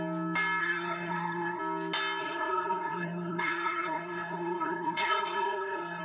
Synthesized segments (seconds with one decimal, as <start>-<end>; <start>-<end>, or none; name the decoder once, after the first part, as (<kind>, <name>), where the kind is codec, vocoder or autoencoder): 0.6-1.6 (codec, SNAC); 2.2-6.0